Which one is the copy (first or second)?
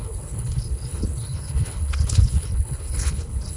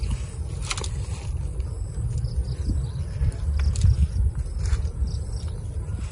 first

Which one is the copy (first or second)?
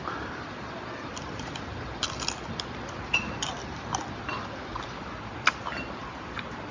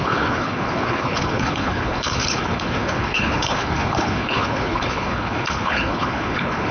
second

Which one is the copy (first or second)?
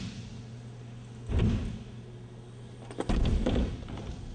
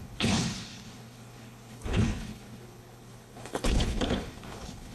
second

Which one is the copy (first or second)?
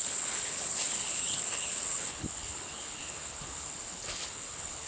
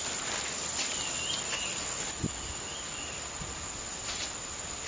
first